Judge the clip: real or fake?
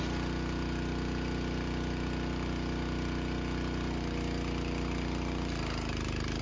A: real